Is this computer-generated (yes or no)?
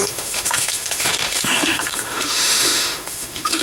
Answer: yes